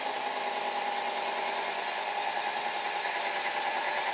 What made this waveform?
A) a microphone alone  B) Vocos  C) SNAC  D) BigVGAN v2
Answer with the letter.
D